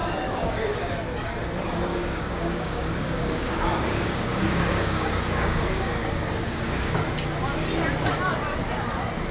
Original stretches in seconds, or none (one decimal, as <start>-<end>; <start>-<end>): 0.9-1.9; 6.9-9.3